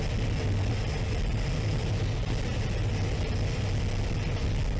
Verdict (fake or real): real